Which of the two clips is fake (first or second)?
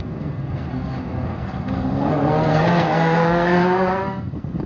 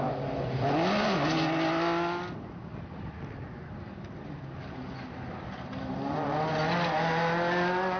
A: first